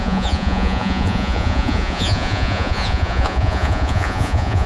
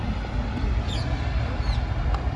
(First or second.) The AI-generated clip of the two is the first